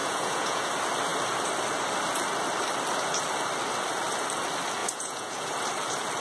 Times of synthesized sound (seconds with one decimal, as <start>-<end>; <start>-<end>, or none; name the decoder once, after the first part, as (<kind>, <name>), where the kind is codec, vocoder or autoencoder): 0.0-0.7 (vocoder, Vocos); 4.8-5.5

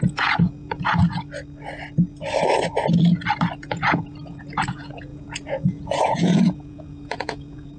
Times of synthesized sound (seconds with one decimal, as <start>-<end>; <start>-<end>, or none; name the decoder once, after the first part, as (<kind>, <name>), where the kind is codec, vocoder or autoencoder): 0.0-1.0 (vocoder, Vocos); 3.6-7.8